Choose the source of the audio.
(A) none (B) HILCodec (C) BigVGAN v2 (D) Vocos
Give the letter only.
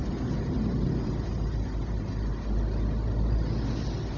A